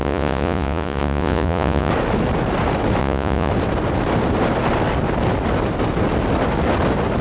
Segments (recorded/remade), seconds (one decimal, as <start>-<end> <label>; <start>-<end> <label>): 0.0-1.9 remade; 1.9-3.0 recorded; 3.0-3.5 remade; 3.5-7.2 recorded